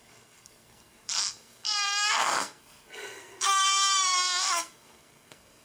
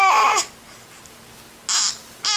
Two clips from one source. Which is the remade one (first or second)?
first